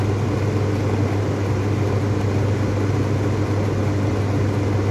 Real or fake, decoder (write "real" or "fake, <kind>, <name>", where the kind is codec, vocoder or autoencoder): real